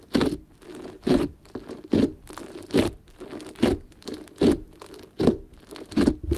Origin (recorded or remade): recorded